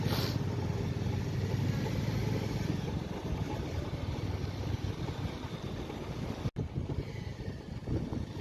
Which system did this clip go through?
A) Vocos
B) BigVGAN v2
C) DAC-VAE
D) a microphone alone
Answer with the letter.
D